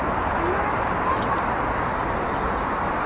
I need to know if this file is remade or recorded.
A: recorded